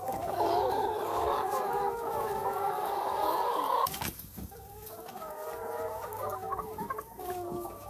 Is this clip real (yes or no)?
no